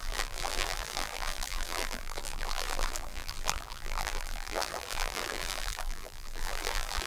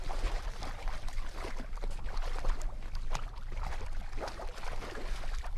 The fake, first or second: first